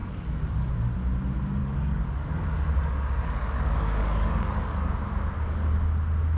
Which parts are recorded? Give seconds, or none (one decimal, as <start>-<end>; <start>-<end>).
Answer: 0.7-1.6; 4.9-6.4